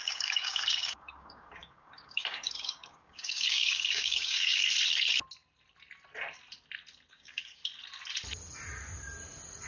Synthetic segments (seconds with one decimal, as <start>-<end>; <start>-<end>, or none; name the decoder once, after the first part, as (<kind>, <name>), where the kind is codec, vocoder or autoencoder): 0.0-4.6 (codec, DAC); 7.1-7.6

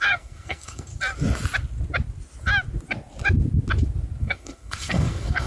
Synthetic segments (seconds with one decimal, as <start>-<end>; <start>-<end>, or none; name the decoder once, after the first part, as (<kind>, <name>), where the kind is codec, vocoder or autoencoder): 0.0-0.9 (codec, SNAC); 4.2-5.5

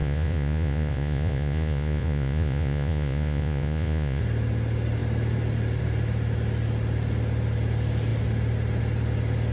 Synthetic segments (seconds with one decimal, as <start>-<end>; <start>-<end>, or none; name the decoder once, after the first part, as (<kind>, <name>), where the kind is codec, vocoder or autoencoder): 0.0-4.2 (vocoder, Vocos)

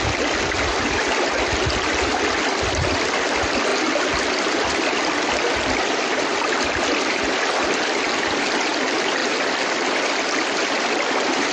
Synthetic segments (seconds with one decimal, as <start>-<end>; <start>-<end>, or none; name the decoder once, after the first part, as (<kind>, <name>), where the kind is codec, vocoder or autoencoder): none